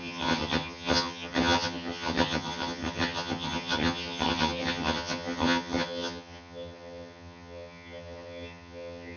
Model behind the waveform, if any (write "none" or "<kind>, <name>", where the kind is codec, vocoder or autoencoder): vocoder, HiFi-GAN